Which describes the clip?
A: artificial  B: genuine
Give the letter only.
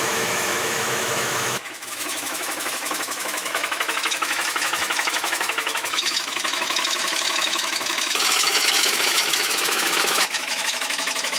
A